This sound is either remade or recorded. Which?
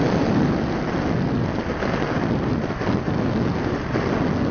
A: recorded